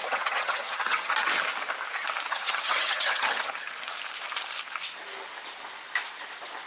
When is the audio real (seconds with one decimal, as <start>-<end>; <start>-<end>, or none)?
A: 1.1-2.3; 3.5-6.7